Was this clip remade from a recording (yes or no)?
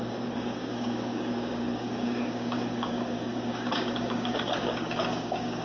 yes